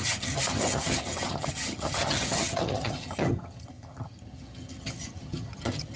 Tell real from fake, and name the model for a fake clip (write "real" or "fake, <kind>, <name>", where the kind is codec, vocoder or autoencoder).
fake, vocoder, HiFi-GAN